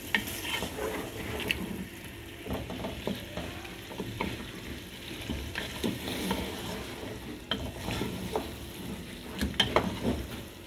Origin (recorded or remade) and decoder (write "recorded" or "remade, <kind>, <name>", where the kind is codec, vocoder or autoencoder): recorded